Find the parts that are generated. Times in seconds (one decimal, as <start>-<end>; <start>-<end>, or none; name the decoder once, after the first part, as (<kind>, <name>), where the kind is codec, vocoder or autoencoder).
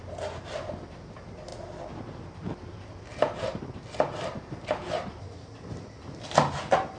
none